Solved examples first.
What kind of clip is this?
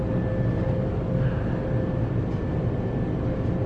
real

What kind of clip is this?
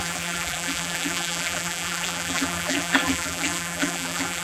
fake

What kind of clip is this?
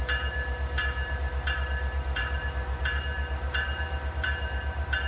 fake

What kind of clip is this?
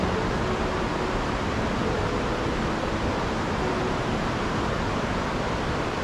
real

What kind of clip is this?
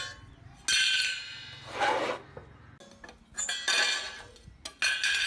real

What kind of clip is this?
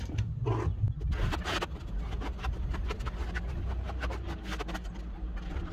real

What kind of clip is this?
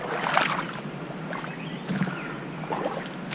real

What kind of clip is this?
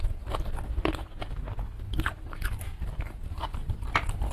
real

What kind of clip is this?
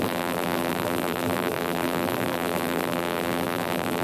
fake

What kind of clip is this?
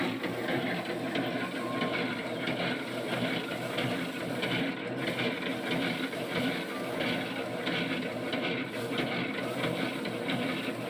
real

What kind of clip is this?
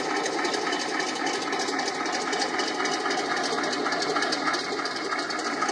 real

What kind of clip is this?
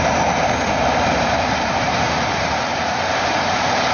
fake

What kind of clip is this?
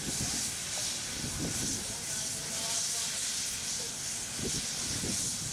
real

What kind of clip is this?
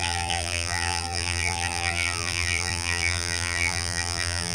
fake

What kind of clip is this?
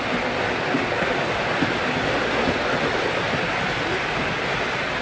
real